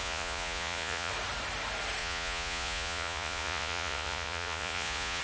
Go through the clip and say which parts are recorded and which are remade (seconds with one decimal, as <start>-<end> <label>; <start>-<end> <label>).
0.0-1.1 remade; 1.1-2.0 recorded; 2.0-5.2 remade